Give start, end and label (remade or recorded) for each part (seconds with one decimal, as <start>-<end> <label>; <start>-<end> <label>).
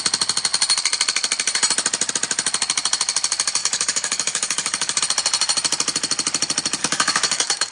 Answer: 0.0-3.6 recorded; 3.6-5.0 remade; 5.0-6.8 recorded; 6.8-7.7 remade